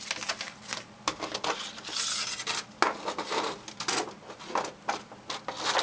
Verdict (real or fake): real